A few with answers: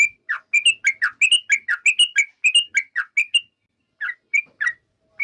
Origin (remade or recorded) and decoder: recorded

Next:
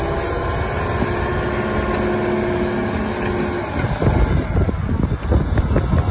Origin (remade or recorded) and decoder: recorded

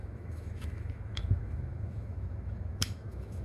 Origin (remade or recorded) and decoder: remade, autoencoder, DAC-VAE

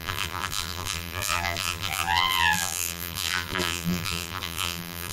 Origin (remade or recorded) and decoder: remade, vocoder, BigVGAN v2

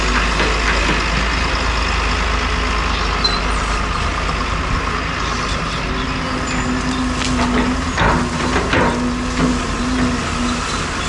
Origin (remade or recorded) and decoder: recorded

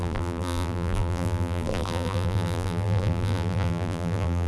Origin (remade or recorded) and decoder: remade, vocoder, BigVGAN v2